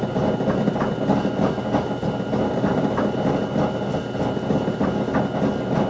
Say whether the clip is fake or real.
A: real